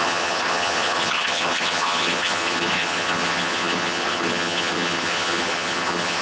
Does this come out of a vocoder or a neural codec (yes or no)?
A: yes